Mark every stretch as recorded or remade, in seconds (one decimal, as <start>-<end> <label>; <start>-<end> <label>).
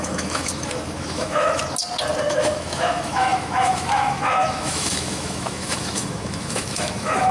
0.0-1.6 remade; 1.6-2.3 recorded; 2.3-7.3 remade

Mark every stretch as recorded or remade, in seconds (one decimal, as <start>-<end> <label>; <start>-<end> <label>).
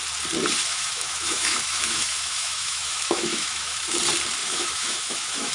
0.0-0.7 recorded; 0.7-4.0 remade; 4.0-4.4 recorded; 4.4-5.5 remade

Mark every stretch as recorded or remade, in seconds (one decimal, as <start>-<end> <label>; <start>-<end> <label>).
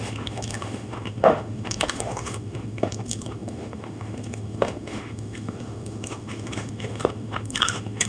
0.0-8.1 remade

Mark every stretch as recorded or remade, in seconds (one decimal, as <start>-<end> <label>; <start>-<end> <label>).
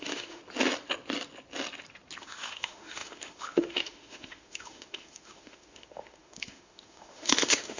0.0-0.4 remade; 0.4-2.2 recorded; 2.2-7.8 remade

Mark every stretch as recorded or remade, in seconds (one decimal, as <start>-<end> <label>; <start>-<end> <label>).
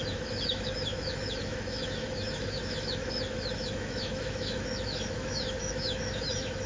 0.0-6.7 remade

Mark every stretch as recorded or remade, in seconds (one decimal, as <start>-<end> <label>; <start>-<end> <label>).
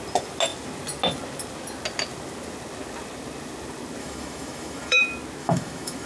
0.0-4.0 recorded; 4.0-5.0 remade; 5.0-5.4 recorded; 5.4-6.1 remade